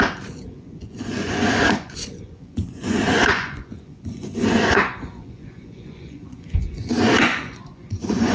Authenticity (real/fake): fake